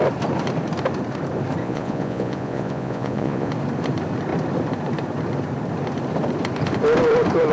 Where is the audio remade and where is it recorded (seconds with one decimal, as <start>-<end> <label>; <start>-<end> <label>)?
0.0-1.6 recorded; 1.6-3.5 remade; 3.5-7.5 recorded